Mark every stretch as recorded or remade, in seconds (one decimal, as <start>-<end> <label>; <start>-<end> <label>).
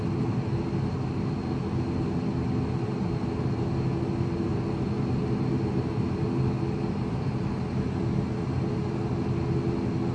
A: 0.0-10.1 recorded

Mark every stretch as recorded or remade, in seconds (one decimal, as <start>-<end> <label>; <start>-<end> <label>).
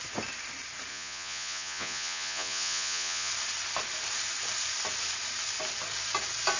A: 0.0-0.9 recorded; 0.9-3.3 remade; 3.3-6.6 recorded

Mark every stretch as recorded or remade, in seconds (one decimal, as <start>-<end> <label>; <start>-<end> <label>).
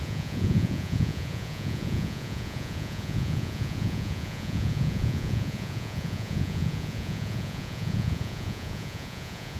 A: 0.0-9.6 remade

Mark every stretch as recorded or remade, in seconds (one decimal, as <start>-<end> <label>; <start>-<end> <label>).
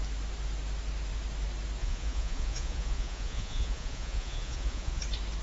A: 0.0-1.8 recorded; 1.8-5.0 remade; 5.0-5.4 recorded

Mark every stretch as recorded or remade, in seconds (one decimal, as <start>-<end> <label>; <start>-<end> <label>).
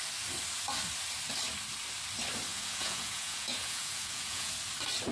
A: 0.0-2.5 recorded; 2.5-4.5 remade; 4.5-5.1 recorded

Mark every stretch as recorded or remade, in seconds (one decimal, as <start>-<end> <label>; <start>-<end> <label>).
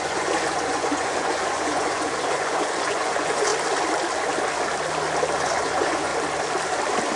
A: 0.0-3.5 remade; 3.5-5.4 recorded; 5.4-6.1 remade; 6.1-7.2 recorded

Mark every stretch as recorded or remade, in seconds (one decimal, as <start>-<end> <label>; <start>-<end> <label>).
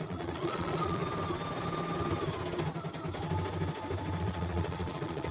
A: 0.0-1.0 remade; 1.0-4.2 recorded; 4.2-5.3 remade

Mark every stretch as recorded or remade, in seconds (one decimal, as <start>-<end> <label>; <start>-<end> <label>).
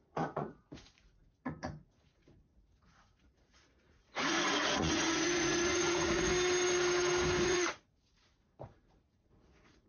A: 0.0-6.3 remade; 6.3-7.4 recorded; 7.4-9.9 remade